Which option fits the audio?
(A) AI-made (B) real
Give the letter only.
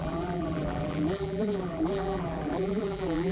A